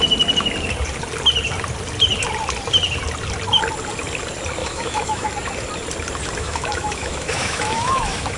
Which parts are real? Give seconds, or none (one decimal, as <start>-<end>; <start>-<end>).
0.0-4.6; 5.3-6.4